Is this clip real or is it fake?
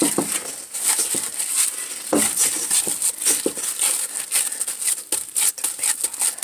real